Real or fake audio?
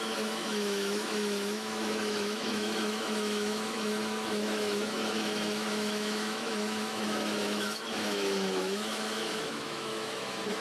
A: fake